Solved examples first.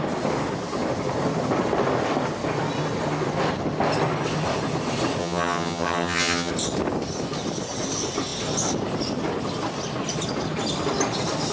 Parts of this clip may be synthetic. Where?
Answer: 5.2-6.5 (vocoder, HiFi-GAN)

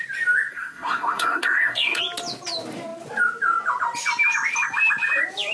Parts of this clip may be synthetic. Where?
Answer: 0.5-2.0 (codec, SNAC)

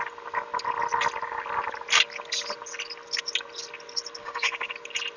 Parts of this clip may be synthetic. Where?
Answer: 4.2-4.7 (codec, DAC)